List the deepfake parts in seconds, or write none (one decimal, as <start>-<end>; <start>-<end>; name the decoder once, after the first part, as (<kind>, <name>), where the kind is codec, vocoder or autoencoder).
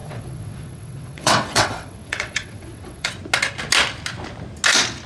0.0-3.1 (vocoder, WaveNeXt)